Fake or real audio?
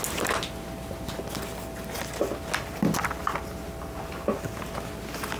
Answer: real